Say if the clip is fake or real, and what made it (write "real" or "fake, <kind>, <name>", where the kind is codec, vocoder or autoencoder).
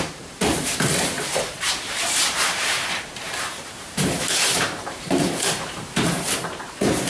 fake, vocoder, BigVGAN v2